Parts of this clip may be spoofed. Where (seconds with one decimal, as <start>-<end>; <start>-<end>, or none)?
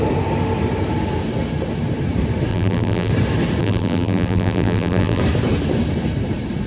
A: 2.5-3.1; 3.6-5.2